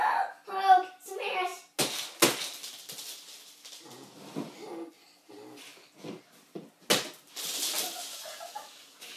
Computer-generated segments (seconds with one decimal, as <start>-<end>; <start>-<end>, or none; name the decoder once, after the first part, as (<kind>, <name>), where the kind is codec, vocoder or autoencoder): 8.1-9.2 (codec, DAC)